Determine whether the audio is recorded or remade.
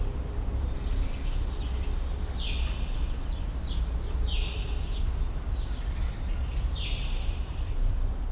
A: recorded